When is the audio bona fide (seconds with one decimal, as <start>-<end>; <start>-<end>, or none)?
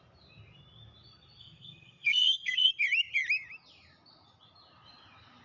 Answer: 0.0-1.4; 2.7-5.4